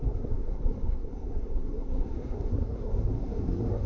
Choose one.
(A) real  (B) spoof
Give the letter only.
B